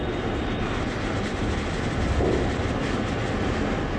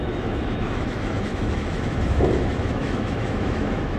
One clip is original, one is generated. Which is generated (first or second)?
second